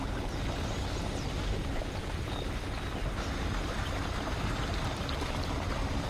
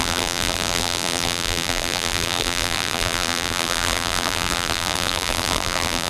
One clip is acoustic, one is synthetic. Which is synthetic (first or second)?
second